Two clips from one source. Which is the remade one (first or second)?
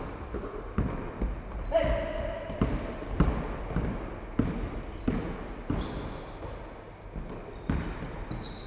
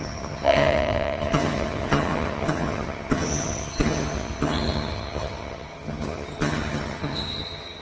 second